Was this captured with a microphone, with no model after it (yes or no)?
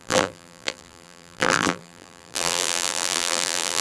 no